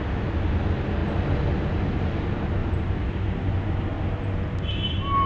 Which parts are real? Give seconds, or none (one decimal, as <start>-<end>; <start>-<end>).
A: 0.0-5.3